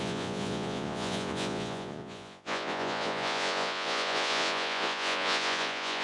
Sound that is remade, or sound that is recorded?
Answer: remade